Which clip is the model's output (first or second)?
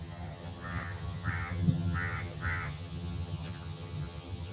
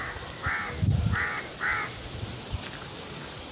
first